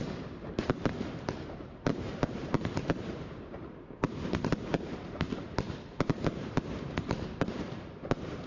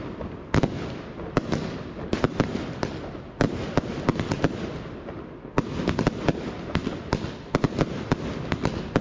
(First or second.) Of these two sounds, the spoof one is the first